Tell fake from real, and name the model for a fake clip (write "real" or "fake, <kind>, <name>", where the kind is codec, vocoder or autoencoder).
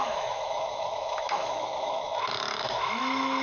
fake, autoencoder, DAC-VAE